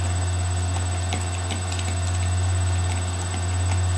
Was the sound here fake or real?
real